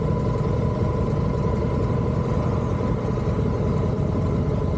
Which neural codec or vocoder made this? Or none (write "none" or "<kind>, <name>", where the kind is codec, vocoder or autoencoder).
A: none